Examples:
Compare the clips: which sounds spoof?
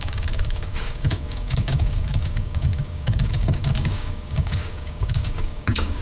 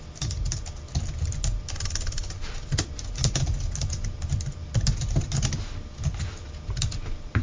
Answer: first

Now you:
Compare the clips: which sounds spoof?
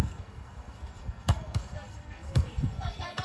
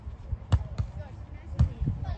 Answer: first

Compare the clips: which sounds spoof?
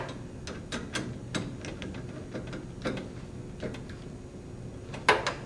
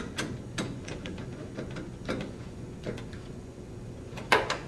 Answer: second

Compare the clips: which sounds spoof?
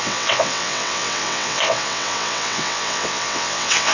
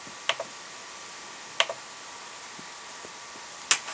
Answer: first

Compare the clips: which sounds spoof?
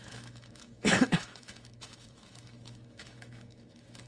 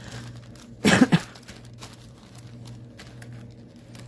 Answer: first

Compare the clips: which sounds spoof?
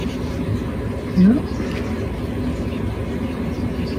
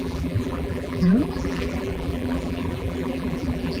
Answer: second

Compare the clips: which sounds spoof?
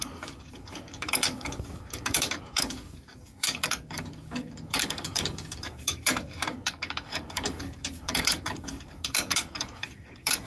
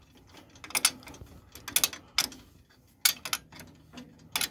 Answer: first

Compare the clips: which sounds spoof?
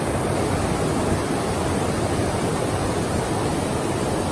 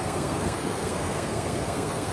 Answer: second